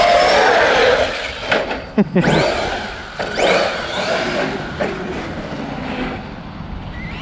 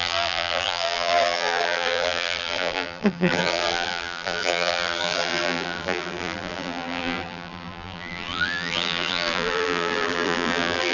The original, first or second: first